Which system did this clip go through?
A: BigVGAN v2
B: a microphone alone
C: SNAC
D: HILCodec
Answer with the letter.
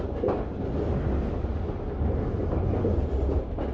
B